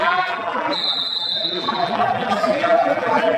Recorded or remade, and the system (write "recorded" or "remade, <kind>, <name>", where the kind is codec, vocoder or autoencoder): remade, vocoder, BigVGAN v2